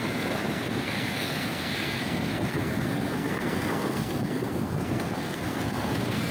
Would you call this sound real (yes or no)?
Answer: no